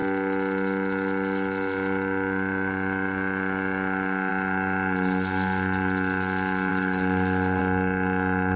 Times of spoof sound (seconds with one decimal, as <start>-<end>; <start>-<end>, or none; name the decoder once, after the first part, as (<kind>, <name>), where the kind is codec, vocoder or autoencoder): 6.7-7.6 (autoencoder, DAC-VAE)